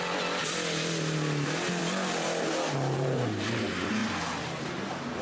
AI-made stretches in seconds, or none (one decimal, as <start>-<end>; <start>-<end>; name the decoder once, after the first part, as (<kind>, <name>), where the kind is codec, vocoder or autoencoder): none